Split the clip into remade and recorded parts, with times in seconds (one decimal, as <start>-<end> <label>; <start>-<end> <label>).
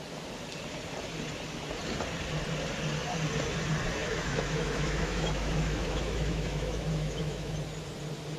0.0-4.0 recorded; 4.0-7.5 remade; 7.5-8.4 recorded